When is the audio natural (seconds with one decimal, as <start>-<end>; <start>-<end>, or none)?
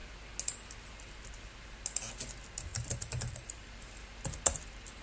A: 0.0-2.7; 3.7-5.0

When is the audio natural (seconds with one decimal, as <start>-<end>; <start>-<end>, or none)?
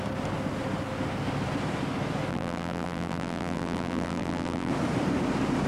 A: 0.0-2.3; 4.7-5.7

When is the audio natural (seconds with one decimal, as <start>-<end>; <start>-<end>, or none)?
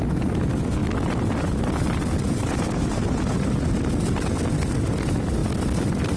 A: 0.0-0.8; 2.8-5.4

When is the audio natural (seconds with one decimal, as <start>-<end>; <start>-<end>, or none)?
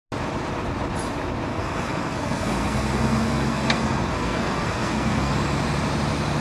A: 0.0-1.5; 5.3-6.4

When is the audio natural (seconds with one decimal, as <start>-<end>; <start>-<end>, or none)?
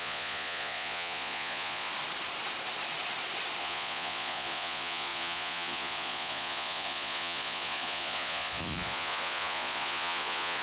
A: 1.9-3.6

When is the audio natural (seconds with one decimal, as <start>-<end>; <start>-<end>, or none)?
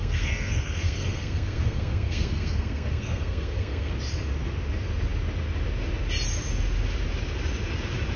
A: 3.9-8.2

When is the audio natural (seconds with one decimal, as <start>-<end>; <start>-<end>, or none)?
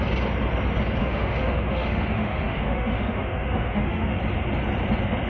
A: 0.0-1.0; 4.2-5.3